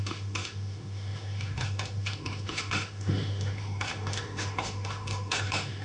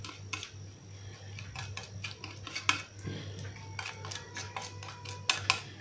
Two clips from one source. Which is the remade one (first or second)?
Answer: first